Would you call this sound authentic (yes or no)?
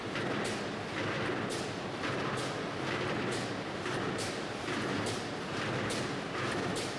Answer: yes